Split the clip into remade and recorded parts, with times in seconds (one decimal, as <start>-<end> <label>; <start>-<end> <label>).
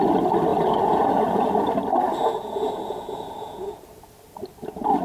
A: 0.0-0.5 recorded; 0.5-1.6 remade; 1.6-2.2 recorded; 2.2-3.8 remade; 3.8-5.0 recorded